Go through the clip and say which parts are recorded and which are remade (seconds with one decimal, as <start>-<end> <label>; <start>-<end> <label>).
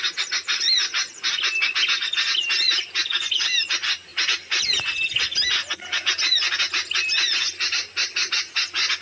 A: 0.0-9.0 recorded